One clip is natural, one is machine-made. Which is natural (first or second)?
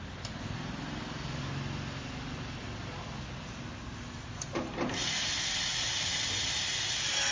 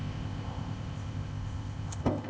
first